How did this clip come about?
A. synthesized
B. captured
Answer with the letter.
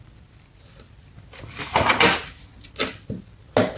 B